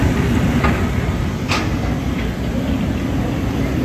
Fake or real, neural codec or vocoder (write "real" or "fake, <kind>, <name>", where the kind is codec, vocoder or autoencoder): real